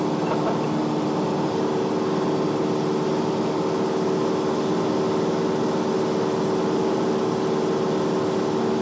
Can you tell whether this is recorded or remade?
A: recorded